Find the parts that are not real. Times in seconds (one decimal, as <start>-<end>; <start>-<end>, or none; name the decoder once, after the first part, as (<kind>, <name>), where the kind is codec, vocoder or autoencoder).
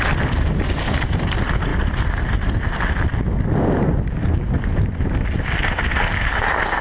1.7-2.9 (vocoder, BigVGAN v2)